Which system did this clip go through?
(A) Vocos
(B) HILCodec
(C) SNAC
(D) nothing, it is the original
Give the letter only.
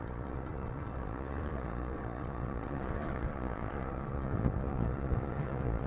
A